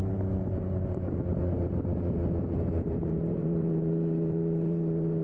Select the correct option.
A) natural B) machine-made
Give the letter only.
B